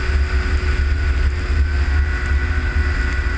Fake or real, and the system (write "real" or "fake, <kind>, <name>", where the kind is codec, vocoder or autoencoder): real